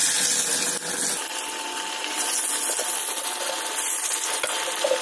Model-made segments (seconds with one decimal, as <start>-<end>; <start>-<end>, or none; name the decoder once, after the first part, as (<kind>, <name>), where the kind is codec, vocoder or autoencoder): none

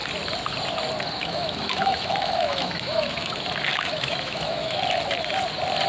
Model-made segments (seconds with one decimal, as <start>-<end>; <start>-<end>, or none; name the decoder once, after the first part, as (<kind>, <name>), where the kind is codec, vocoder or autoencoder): 1.2-3.3 (autoencoder, DAC-VAE); 3.7-4.8

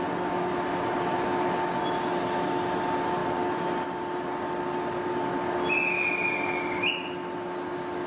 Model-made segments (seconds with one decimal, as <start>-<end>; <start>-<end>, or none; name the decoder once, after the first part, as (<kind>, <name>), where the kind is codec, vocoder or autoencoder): none

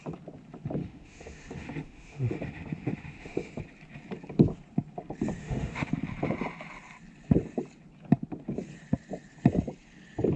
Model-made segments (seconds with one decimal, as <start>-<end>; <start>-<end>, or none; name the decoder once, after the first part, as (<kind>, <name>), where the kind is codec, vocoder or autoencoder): 0.8-3.6 (autoencoder, DAC-VAE); 5.4-5.9

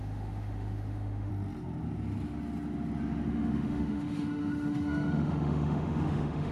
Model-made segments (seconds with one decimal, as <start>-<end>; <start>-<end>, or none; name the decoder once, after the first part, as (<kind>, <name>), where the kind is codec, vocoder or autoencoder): 0.0-1.3 (autoencoder, DAC-VAE); 3.3-6.5